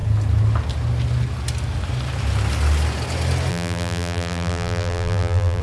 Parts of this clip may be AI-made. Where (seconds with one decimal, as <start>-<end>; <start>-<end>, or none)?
3.5-5.6